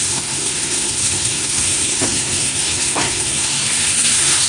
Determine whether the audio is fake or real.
fake